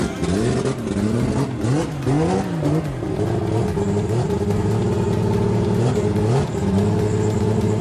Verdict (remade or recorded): recorded